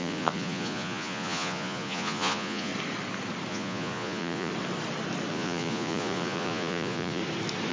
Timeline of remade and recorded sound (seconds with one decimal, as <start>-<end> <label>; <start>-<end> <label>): 0.0-2.7 remade; 2.7-3.5 recorded; 3.5-4.5 remade; 4.5-5.3 recorded; 5.3-7.2 remade; 7.2-7.7 recorded